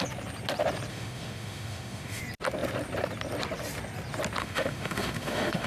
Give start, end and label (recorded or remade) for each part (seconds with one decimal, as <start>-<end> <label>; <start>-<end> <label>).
0.0-0.9 recorded; 0.9-2.2 remade; 2.2-4.4 recorded; 4.4-5.7 remade